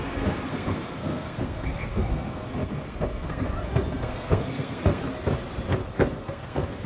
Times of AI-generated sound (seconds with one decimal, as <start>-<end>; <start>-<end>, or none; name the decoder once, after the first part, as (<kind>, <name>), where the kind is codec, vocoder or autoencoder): 0.0-5.0 (codec, SNAC); 5.9-6.9